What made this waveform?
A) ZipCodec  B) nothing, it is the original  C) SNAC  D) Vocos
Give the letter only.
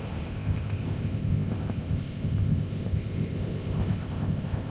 A